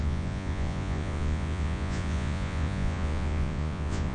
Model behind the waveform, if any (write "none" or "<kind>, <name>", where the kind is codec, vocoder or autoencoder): vocoder, Vocos